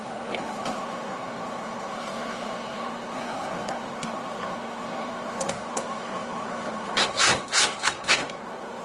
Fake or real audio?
fake